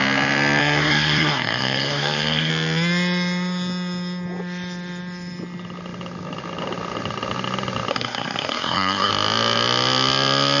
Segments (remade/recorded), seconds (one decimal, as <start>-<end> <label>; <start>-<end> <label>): 0.0-0.6 recorded; 0.6-2.5 remade; 2.5-7.9 recorded; 7.9-9.1 remade; 9.1-10.6 recorded